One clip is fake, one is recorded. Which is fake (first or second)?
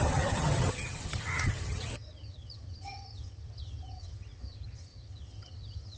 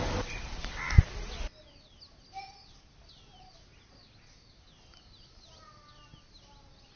first